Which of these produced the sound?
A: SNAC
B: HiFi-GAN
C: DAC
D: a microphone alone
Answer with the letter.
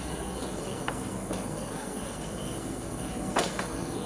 A